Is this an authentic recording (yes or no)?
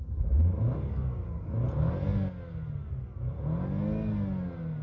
yes